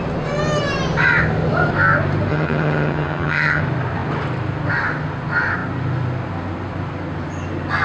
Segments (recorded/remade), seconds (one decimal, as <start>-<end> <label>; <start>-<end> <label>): 0.0-2.3 recorded; 2.3-3.6 remade; 3.6-7.8 recorded

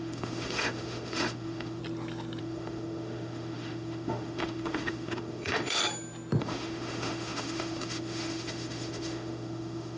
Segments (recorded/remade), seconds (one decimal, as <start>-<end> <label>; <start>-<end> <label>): 0.0-1.8 remade; 1.8-2.4 recorded; 2.4-5.8 remade; 5.8-6.4 recorded; 6.4-10.0 remade

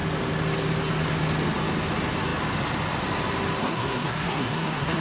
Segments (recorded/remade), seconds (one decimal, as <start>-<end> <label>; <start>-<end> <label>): 0.0-3.6 recorded; 3.6-5.0 remade

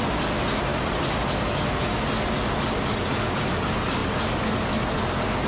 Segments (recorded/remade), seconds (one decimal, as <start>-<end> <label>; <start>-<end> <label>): 0.0-5.5 recorded

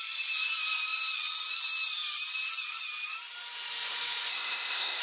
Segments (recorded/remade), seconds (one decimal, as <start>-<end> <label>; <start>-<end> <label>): 0.0-4.3 recorded; 4.3-5.0 remade